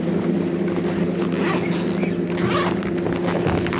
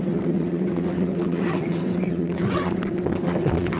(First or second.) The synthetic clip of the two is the second